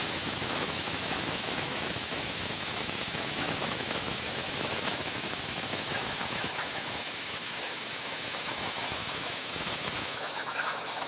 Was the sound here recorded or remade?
remade